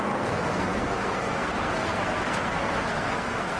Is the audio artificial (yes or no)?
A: yes